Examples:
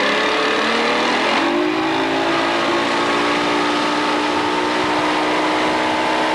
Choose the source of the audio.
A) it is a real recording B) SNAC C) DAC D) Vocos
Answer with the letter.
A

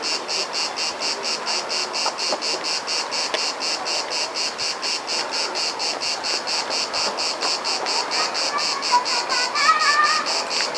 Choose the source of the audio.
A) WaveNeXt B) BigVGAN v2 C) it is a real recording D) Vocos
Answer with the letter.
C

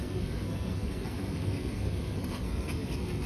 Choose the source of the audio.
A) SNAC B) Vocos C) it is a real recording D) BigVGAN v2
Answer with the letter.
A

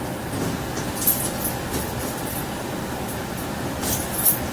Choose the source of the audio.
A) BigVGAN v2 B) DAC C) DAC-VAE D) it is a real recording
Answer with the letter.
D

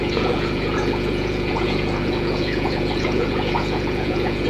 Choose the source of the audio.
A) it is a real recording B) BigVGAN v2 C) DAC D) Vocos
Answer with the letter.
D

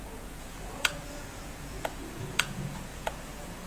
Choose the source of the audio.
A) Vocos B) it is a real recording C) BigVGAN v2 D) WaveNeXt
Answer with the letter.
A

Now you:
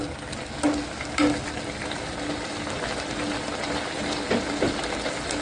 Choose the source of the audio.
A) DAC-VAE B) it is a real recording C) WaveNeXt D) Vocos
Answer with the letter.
B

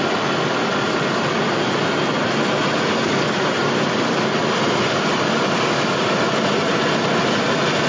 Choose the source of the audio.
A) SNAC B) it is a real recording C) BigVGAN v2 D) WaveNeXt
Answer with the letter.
B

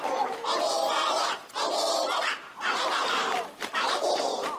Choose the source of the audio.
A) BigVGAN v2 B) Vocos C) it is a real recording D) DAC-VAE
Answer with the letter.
C